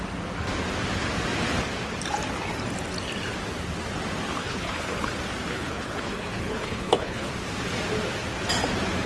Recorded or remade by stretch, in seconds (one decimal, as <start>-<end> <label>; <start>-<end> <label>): 0.0-4.4 recorded; 4.4-5.1 remade; 5.1-5.5 recorded; 5.5-7.3 remade; 7.3-9.1 recorded